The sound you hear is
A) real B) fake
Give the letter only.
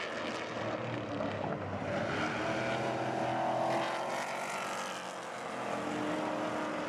A